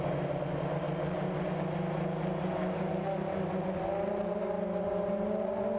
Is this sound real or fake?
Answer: real